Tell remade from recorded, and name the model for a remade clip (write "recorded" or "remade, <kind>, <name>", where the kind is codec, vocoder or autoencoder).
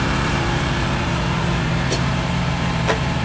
remade, vocoder, BigVGAN v2